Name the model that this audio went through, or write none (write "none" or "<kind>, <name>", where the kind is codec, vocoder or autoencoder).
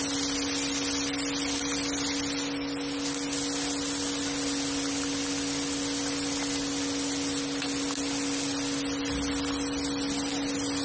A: none